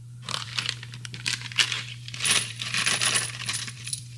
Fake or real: fake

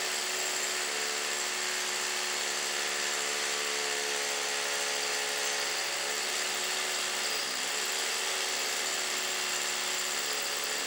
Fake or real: real